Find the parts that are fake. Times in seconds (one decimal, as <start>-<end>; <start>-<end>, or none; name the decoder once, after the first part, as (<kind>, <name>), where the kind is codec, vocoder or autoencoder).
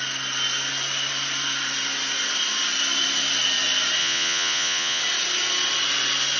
4.0-5.0 (vocoder, Vocos)